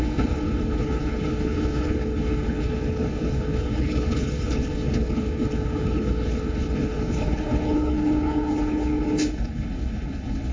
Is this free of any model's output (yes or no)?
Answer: no